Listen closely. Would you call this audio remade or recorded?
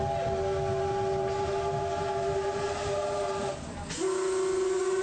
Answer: recorded